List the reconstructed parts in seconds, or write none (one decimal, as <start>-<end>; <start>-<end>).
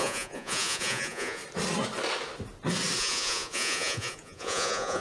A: 0.0-1.4; 3.0-5.0